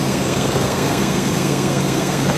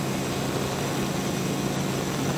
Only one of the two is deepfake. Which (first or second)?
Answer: first